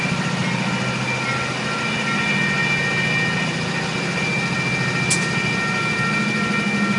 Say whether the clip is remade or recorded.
recorded